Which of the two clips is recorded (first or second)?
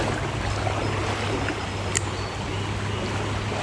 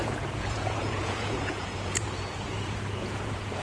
first